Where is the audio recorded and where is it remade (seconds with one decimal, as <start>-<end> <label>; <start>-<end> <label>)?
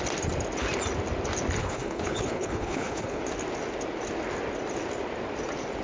0.0-1.6 recorded; 1.6-3.2 remade; 3.2-5.8 recorded